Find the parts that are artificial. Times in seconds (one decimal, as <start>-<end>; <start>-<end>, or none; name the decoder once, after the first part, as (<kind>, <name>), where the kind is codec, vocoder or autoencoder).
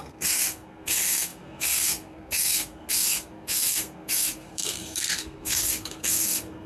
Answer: 0.0-6.7 (codec, SNAC)